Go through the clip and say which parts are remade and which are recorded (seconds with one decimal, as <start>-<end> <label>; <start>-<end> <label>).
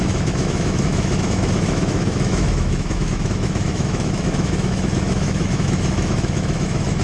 0.0-7.0 remade